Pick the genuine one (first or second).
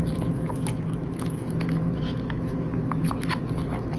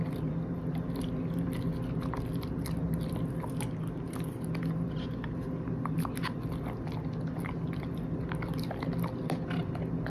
second